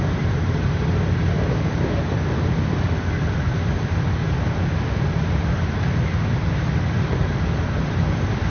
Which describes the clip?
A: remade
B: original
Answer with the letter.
B